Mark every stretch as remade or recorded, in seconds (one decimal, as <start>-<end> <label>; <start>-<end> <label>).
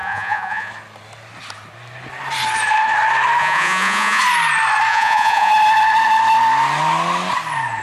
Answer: 0.0-0.7 remade; 0.7-3.4 recorded; 3.4-4.2 remade; 4.2-4.9 recorded; 4.9-5.5 remade; 5.5-7.8 recorded